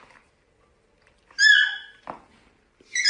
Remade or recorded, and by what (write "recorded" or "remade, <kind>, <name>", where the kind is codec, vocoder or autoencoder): recorded